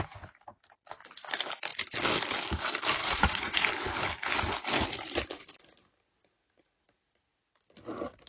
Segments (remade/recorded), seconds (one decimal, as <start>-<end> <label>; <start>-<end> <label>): 0.0-3.0 recorded; 3.0-3.6 remade; 3.6-8.3 recorded